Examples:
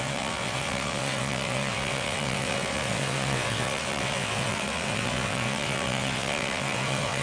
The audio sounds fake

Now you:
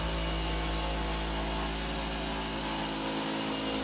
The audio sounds real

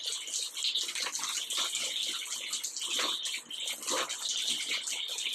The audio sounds real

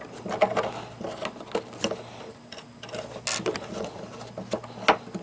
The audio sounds real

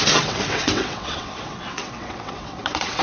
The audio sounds fake